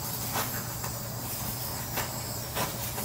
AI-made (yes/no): no